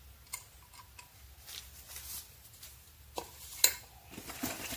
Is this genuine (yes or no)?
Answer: yes